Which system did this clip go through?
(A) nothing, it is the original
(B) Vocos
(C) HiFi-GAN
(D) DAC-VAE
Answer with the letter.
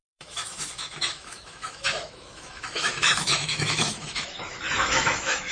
D